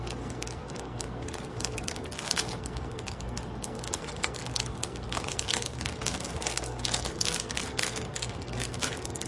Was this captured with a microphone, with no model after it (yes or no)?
no